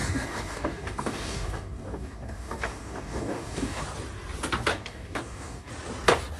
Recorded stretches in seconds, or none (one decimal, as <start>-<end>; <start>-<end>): 3.8-4.7; 5.7-6.4